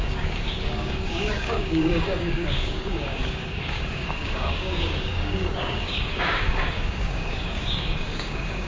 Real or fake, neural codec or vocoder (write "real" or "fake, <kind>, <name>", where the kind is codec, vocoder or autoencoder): fake, codec, DAC